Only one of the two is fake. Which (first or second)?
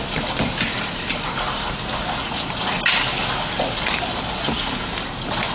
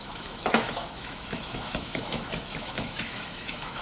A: second